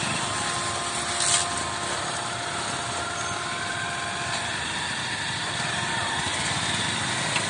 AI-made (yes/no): no